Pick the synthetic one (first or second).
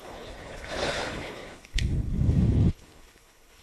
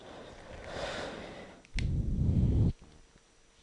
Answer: first